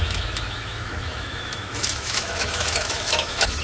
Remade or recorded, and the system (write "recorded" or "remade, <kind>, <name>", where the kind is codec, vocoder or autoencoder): remade, autoencoder, DAC-VAE